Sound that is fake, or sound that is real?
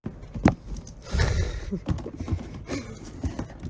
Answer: real